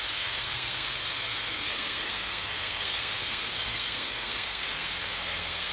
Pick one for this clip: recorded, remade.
remade